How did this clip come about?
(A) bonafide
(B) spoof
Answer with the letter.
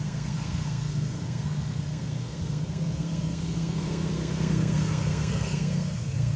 B